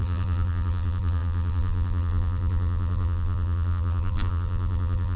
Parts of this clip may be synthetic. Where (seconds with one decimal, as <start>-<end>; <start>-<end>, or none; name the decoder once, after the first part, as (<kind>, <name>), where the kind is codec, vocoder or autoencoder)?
0.0-5.2 (vocoder, BigVGAN v2)